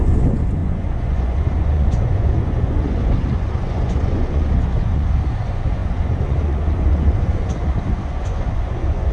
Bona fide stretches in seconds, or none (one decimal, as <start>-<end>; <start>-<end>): none